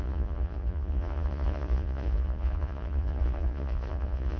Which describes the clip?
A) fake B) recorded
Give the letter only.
A